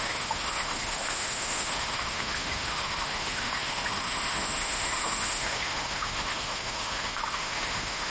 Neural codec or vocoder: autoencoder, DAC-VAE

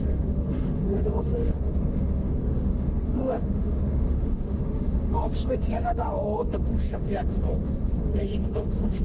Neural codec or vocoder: autoencoder, DAC-VAE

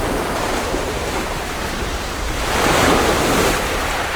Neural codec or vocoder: none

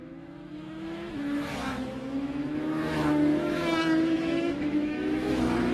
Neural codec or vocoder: autoencoder, DAC-VAE